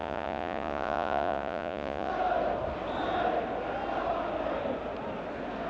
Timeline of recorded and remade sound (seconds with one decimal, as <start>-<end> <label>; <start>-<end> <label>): 0.0-2.1 remade; 2.1-5.7 recorded